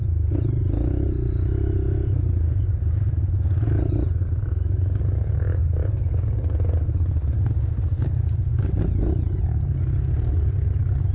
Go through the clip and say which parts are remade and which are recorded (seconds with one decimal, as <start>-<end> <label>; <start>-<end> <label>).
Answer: 0.0-11.1 recorded